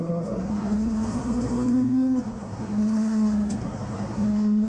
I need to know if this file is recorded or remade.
remade